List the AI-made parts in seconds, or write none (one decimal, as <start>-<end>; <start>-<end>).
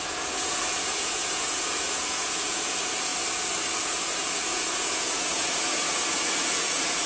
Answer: 0.0-3.1; 3.8-7.1